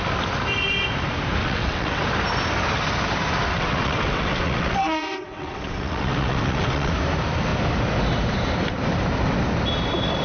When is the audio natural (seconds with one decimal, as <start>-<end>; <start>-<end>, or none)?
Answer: 0.0-1.4; 2.0-3.5; 6.9-10.2